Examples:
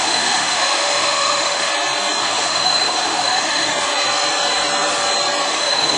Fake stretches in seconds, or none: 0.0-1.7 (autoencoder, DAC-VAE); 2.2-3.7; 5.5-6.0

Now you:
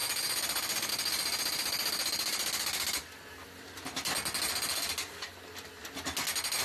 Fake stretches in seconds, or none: none

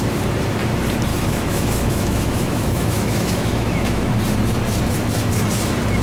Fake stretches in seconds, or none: 1.1-4.1 (autoencoder, DAC-VAE)

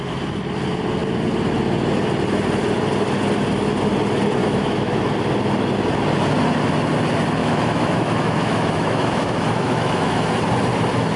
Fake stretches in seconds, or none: 4.4-5.0 (autoencoder, DAC-VAE); 7.4-10.3

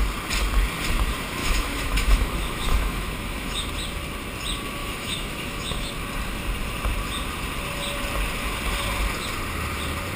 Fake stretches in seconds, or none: 1.4-3.7 (autoencoder, DAC-VAE); 4.8-5.9

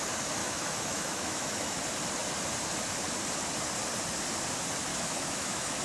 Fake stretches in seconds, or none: 0.4-1.8 (autoencoder, DAC-VAE); 4.9-5.8

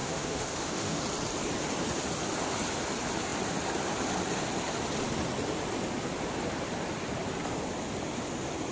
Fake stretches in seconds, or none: 0.0-1.0 (autoencoder, DAC-VAE)